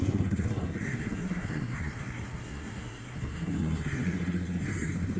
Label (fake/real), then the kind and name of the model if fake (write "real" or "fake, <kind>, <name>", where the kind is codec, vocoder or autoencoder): fake, codec, SNAC